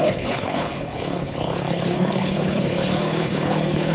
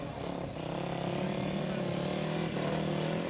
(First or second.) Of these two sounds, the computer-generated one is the first